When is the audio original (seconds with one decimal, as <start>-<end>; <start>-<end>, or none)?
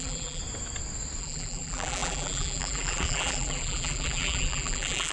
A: 0.4-1.2